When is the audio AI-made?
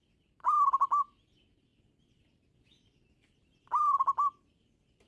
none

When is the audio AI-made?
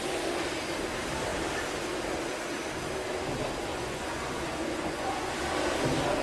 3.7-5.3 (vocoder, Vocos)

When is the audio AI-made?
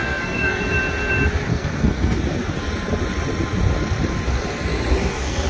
0.0-0.6 (codec, SNAC); 1.5-2.2; 5.0-5.5